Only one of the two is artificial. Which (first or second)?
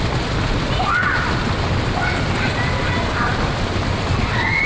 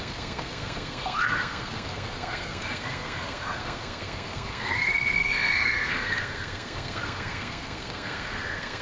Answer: second